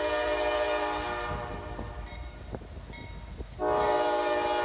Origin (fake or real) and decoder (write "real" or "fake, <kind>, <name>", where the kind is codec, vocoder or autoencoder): real